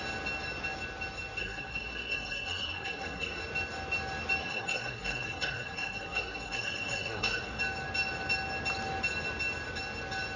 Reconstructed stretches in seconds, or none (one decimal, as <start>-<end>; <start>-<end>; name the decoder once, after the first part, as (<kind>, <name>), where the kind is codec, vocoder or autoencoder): 1.4-3.4 (codec, SNAC); 4.4-7.6